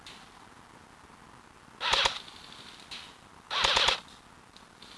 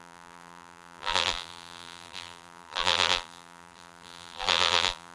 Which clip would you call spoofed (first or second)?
second